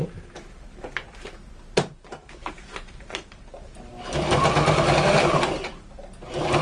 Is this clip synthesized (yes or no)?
no